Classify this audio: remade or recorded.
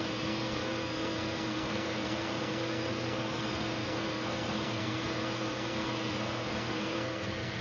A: remade